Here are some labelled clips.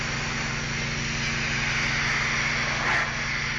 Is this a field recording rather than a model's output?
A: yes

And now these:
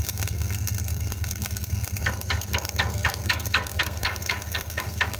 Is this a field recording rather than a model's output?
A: no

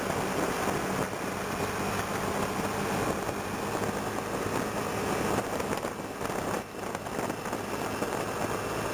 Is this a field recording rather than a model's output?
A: yes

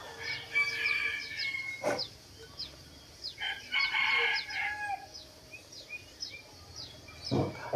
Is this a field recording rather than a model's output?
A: yes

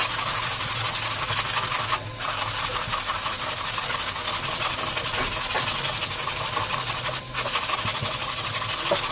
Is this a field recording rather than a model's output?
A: yes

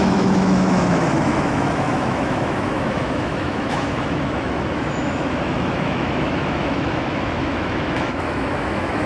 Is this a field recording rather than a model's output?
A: no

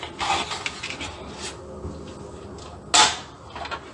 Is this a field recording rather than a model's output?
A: yes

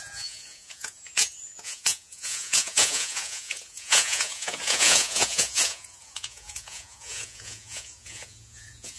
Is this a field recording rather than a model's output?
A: no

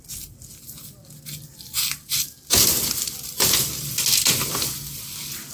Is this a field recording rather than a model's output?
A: yes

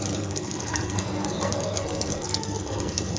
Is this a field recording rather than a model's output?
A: no